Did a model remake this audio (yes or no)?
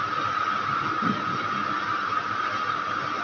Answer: no